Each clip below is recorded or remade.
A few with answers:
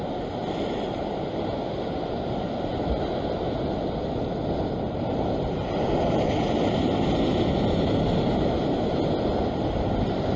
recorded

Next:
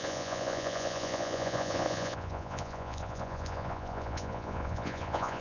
remade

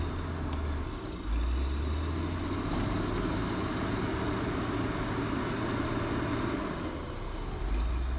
recorded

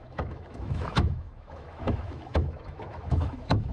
remade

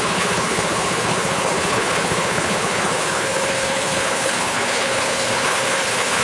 remade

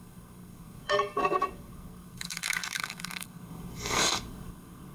remade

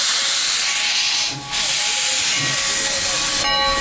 recorded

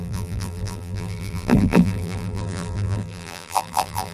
remade